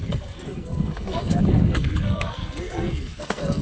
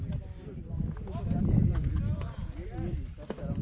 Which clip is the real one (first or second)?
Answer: second